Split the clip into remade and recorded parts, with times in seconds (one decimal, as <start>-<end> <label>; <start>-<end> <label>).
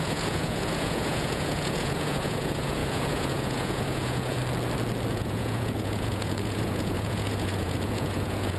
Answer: 0.0-4.4 remade; 4.4-5.1 recorded; 5.1-8.6 remade